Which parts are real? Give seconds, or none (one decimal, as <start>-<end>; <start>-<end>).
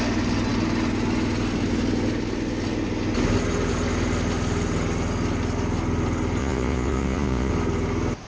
0.0-6.4; 7.5-8.3